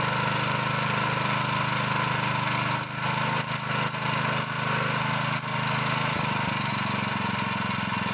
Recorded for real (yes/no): yes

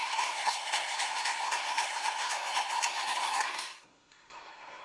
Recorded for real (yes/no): no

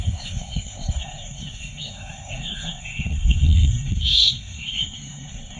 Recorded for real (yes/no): no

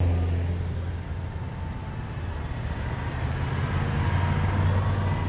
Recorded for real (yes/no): yes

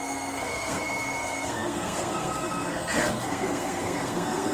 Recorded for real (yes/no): no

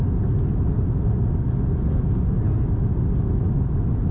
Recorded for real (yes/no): yes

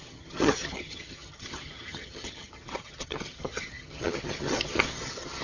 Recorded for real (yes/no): no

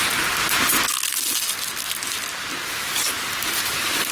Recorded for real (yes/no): yes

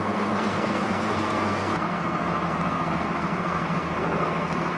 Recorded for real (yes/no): no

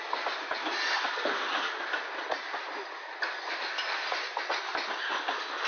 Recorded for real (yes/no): yes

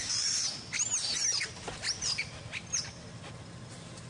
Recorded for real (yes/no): yes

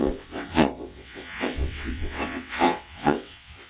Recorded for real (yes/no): no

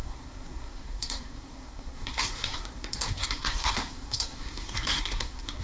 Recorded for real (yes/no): no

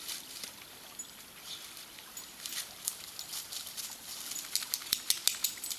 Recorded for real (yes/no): yes